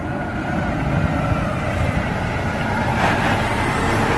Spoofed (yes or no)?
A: no